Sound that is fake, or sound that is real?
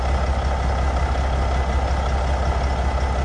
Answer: real